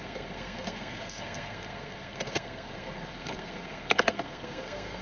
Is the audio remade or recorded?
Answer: remade